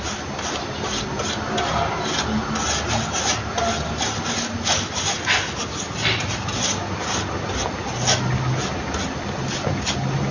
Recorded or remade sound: recorded